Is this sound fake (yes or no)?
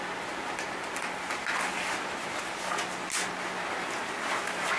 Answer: no